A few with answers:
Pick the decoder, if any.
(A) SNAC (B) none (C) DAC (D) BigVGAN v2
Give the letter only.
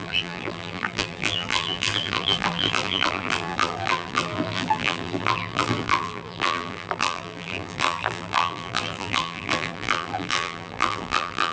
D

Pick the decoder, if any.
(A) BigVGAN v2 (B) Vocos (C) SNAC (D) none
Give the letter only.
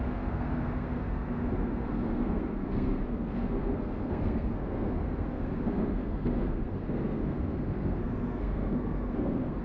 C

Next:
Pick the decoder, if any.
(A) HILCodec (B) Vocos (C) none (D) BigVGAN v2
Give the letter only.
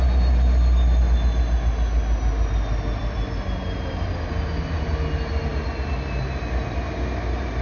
C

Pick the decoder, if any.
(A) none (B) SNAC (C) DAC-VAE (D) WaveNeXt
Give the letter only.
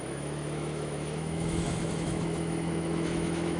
C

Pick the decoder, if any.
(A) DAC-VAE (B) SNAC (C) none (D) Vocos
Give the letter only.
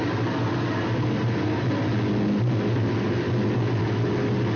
C